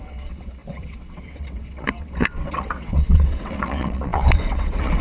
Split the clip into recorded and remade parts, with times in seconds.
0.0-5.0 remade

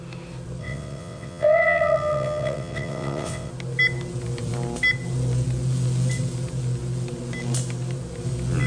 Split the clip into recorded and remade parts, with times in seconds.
0.0-0.6 recorded; 0.6-3.5 remade; 3.5-8.7 recorded